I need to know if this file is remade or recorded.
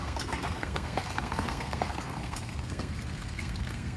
remade